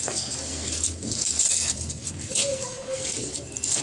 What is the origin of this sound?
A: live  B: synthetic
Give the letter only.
B